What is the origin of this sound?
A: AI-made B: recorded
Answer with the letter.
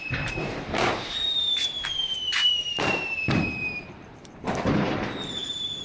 A